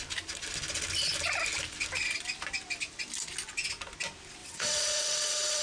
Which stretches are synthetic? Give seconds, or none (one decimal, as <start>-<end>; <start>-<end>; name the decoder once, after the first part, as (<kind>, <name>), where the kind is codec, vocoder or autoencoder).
4.4-5.6 (vocoder, WaveNeXt)